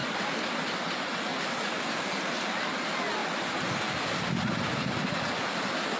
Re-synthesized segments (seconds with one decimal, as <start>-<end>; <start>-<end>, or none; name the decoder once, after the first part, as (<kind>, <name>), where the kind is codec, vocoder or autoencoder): 0.0-0.7 (vocoder, BigVGAN v2); 1.3-2.1